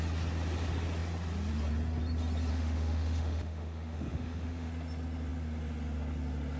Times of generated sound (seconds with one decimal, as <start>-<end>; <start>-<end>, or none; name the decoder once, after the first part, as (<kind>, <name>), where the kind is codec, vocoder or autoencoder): 2.5-4.7 (autoencoder, DAC-VAE)